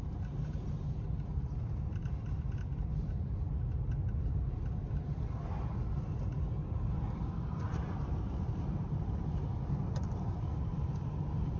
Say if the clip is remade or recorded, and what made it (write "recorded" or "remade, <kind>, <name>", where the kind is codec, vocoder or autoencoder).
recorded